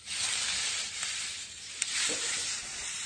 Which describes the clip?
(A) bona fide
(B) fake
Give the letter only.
A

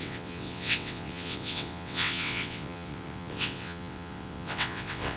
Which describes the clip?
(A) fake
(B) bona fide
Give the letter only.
A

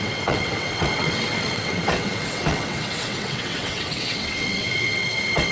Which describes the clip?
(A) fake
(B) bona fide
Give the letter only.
A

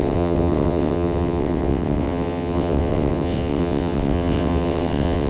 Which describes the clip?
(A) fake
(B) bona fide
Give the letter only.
A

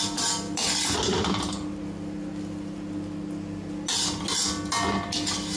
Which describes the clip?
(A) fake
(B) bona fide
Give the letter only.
B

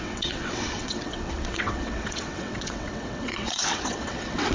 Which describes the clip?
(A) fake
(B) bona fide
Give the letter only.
A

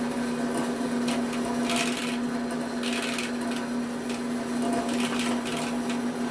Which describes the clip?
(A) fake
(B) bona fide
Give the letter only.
B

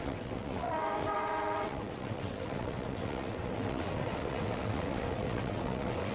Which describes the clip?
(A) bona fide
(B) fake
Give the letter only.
B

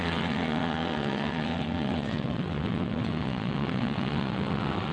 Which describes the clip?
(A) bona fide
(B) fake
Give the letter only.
B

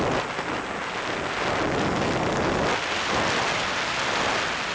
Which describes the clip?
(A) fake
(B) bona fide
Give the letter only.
B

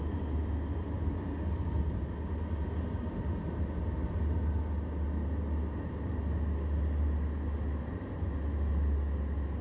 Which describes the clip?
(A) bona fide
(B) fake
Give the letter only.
A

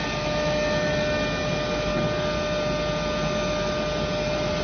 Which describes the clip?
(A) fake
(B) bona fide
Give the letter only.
B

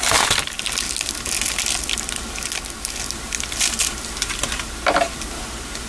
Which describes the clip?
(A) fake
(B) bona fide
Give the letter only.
B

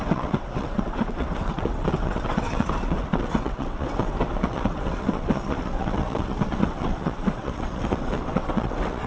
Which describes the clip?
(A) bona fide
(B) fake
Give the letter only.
B